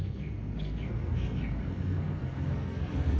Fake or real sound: fake